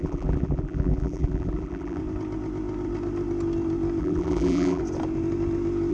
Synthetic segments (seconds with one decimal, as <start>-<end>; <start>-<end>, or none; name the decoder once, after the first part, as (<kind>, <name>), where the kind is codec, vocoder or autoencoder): 0.0-2.0 (vocoder, BigVGAN v2); 4.0-4.8